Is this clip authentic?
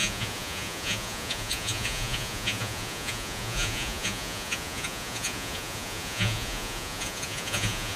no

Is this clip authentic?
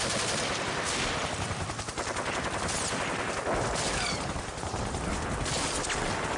yes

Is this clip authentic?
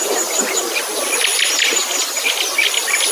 yes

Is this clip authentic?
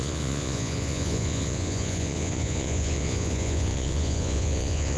no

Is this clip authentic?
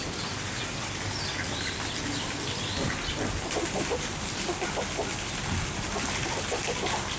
yes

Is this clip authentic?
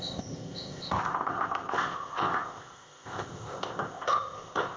no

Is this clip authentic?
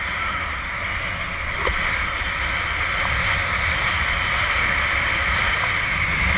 yes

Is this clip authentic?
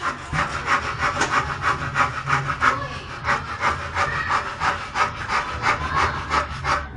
yes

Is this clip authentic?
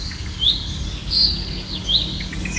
no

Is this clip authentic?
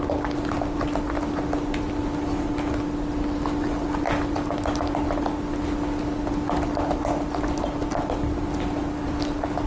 yes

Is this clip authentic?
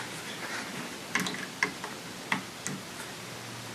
yes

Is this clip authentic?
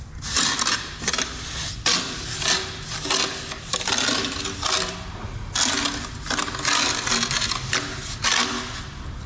yes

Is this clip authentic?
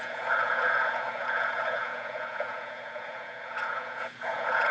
no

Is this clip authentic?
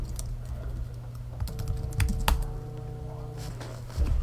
yes